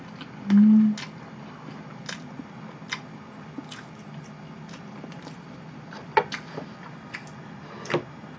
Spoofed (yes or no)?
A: no